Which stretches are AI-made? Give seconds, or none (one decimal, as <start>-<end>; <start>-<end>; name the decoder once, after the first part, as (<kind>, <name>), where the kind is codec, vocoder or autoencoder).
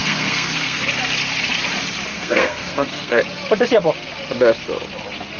0.0-0.8 (codec, SNAC); 2.1-3.2